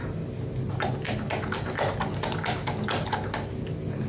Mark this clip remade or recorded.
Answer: recorded